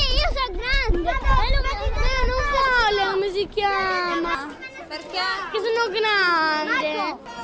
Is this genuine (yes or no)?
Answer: yes